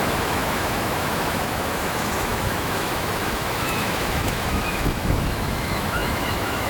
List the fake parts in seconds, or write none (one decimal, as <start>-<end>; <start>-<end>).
0.0-6.7

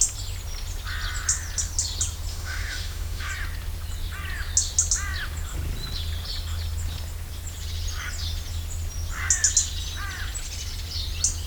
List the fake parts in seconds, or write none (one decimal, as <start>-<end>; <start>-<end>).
2.3-3.3

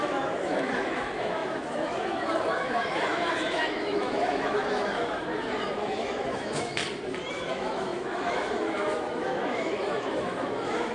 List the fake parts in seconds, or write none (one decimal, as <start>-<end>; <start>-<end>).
0.0-6.8; 7.3-10.9